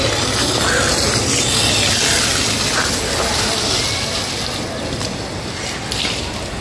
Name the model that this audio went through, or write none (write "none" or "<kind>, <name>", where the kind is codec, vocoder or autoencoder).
none